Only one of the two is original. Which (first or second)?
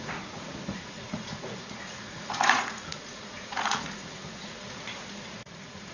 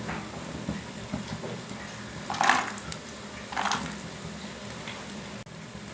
second